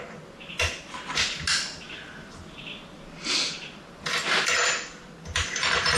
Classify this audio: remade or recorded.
recorded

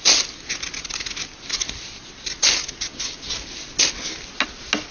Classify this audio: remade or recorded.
recorded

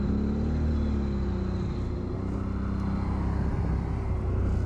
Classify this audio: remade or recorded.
recorded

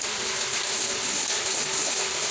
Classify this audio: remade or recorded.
recorded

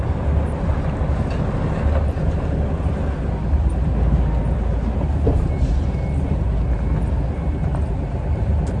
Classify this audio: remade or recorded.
recorded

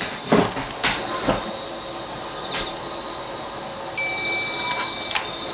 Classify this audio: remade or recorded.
recorded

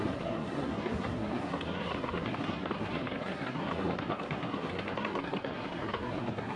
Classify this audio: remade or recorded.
remade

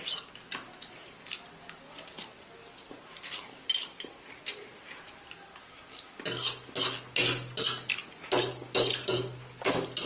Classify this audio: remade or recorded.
recorded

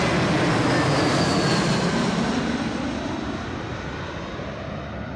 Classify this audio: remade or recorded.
recorded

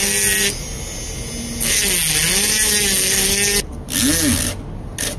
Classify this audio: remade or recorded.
recorded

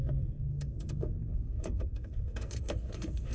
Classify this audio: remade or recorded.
remade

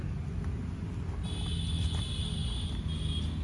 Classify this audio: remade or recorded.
recorded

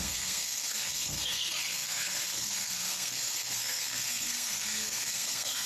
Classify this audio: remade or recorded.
remade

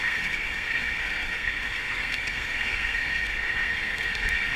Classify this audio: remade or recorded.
remade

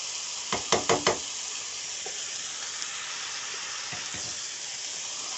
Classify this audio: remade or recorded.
recorded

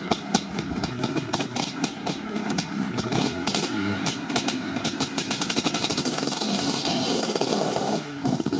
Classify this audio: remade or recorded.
remade